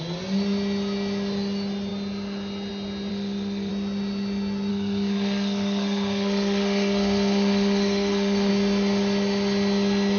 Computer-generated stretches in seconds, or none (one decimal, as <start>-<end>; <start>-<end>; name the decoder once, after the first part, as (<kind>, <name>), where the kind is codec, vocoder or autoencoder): 3.1-3.7 (codec, SNAC); 4.7-8.5